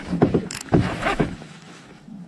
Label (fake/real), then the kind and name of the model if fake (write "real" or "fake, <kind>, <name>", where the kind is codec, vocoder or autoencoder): fake, autoencoder, DAC-VAE